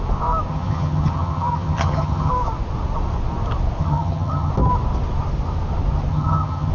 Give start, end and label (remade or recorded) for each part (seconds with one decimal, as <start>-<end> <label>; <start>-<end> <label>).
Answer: 0.0-0.5 recorded; 0.5-2.3 remade; 2.3-3.8 recorded; 3.8-4.5 remade; 4.5-6.1 recorded; 6.1-6.7 remade